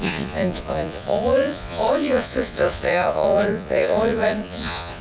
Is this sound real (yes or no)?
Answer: no